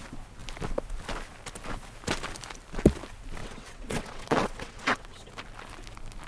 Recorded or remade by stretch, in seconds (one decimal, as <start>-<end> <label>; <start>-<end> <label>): 0.0-3.4 recorded; 3.4-5.3 remade; 5.3-6.3 recorded